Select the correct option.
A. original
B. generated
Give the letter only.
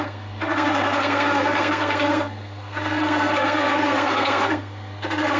B